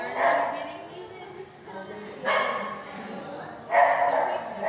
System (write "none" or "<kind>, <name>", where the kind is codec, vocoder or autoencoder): none